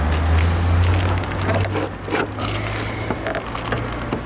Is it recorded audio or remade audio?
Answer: recorded